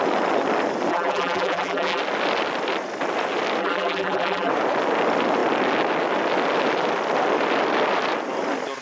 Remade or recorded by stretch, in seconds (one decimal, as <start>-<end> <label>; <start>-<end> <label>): 0.0-0.9 recorded; 0.9-2.0 remade; 2.0-3.6 recorded; 3.6-4.5 remade; 4.5-8.8 recorded

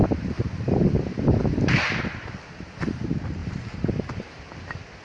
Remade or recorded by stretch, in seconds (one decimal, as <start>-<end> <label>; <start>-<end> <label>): 0.0-1.1 recorded; 1.1-2.0 remade; 2.0-3.4 recorded; 3.4-4.4 remade; 4.4-5.0 recorded

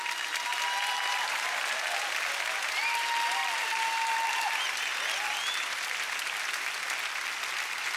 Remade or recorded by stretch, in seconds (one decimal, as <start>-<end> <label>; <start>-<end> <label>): 0.0-8.0 recorded

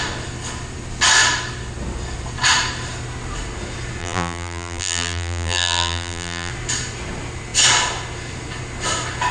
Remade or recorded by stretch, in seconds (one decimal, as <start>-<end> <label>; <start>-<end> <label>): 0.0-4.0 recorded; 4.0-6.5 remade; 6.5-9.3 recorded

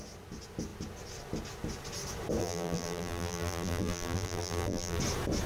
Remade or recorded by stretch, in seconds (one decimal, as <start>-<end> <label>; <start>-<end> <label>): 0.0-2.4 recorded; 2.4-5.0 remade; 5.0-5.5 recorded

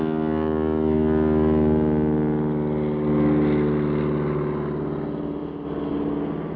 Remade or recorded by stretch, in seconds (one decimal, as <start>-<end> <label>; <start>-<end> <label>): 0.0-6.6 recorded

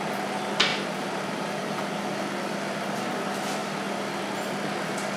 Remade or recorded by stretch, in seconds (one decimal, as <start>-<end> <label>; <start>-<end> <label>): 0.0-0.7 recorded; 0.7-2.0 remade; 2.0-5.2 recorded

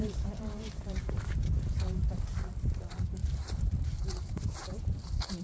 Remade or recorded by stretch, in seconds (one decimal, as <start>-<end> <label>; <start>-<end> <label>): 0.0-5.4 remade